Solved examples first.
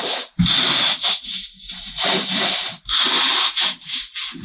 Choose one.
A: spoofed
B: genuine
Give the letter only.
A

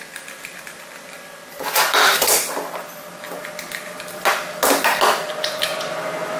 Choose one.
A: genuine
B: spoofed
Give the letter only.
A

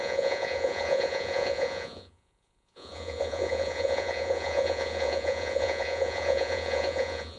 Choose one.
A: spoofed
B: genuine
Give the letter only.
A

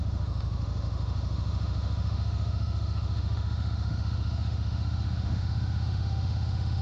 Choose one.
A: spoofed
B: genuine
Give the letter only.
A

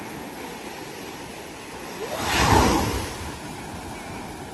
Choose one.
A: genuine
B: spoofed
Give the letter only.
A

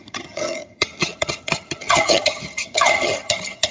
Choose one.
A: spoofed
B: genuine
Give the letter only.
A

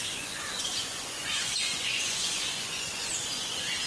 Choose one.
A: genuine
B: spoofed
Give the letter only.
B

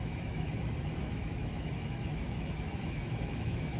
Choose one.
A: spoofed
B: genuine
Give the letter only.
A